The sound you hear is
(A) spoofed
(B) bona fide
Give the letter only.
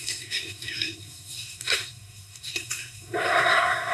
A